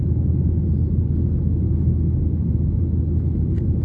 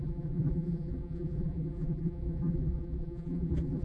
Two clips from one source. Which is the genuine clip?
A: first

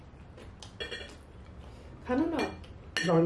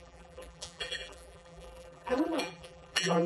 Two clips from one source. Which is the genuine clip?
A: first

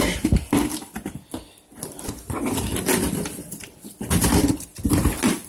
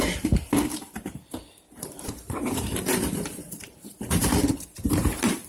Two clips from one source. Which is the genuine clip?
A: first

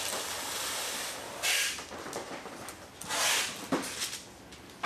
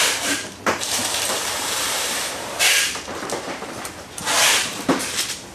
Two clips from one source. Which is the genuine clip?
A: first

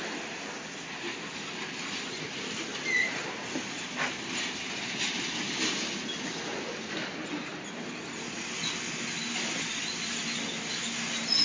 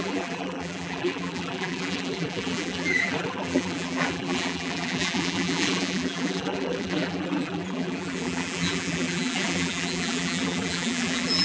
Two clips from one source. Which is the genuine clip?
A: first